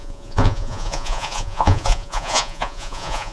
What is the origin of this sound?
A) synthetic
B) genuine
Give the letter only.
A